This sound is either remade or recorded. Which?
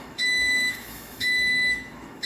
remade